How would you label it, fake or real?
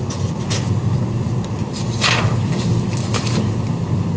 real